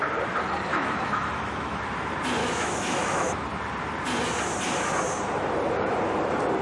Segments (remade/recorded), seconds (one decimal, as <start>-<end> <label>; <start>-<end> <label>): 0.0-0.7 recorded; 0.7-1.8 remade; 1.8-2.4 recorded; 2.4-3.3 remade; 3.3-6.6 recorded